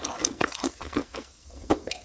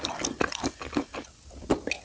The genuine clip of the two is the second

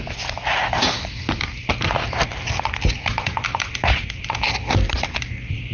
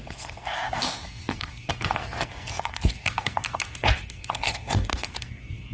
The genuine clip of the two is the first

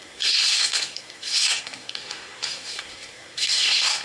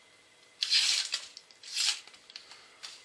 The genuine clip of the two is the second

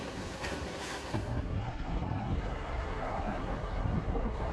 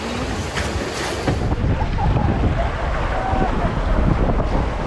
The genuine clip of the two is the second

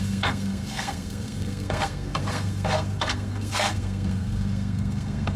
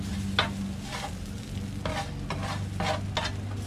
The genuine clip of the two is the second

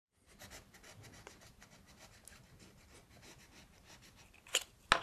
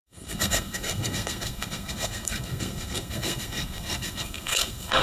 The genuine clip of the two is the first